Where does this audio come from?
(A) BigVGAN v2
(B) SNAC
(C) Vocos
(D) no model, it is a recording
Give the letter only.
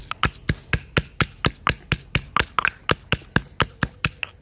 D